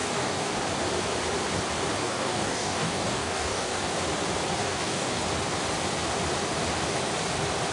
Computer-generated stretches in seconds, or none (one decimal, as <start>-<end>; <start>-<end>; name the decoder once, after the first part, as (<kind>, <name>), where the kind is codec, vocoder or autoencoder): 0.0-0.6 (codec, DAC); 2.0-3.8; 4.6-5.2